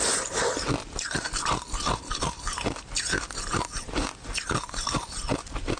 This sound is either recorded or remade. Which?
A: recorded